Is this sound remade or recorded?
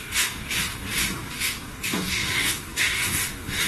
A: remade